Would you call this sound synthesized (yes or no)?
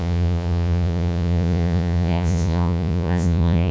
yes